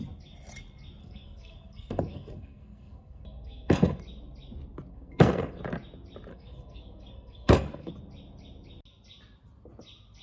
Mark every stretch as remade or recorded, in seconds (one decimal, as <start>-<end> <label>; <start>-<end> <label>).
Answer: 0.0-1.0 recorded; 1.0-4.0 remade; 4.0-4.9 recorded; 4.9-5.6 remade; 5.6-6.3 recorded; 6.3-7.9 remade; 7.9-10.2 recorded